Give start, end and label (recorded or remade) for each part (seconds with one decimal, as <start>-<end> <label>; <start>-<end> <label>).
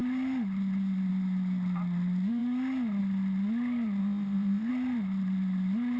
0.0-4.0 recorded; 4.0-4.7 remade; 4.7-6.0 recorded